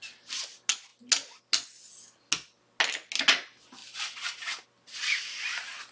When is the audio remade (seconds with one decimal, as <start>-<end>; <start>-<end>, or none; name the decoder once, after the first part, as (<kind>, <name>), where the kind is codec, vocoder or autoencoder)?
none